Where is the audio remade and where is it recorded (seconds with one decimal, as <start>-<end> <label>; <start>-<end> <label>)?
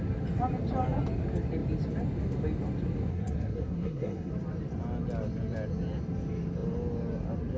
0.0-3.1 recorded; 3.1-4.3 remade; 4.3-7.6 recorded